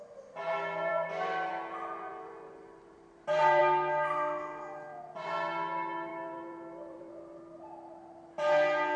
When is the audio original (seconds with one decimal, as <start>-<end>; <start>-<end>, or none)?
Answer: 0.0-0.9; 1.5-2.1; 3.6-6.1; 7.1-9.0